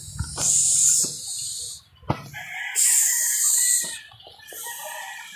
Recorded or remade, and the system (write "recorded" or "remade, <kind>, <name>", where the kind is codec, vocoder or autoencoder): recorded